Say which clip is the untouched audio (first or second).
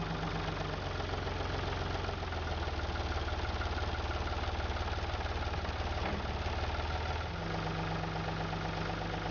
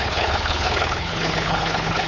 first